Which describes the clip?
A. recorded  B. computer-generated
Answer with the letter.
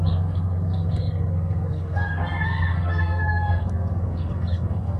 B